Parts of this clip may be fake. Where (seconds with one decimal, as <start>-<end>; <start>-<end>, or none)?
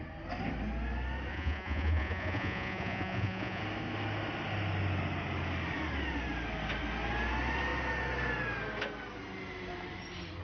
1.3-3.6